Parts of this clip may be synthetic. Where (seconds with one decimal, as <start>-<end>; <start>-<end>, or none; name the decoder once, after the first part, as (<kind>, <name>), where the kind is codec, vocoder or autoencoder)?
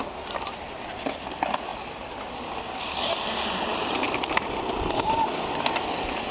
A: none